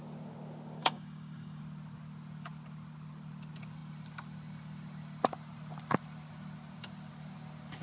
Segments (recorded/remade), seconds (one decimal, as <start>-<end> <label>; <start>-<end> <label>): 0.0-0.8 recorded; 0.8-1.6 remade; 1.6-7.8 recorded